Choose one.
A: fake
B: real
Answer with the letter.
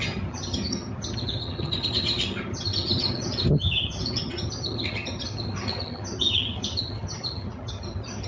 A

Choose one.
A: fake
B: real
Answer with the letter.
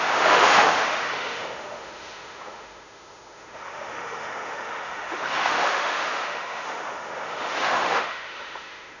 A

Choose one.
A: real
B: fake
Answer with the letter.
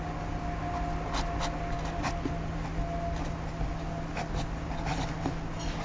A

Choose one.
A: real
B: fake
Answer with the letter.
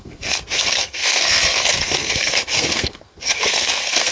B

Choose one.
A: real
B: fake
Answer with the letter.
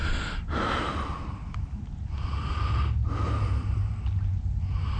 A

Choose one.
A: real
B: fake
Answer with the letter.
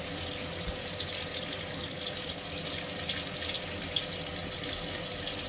A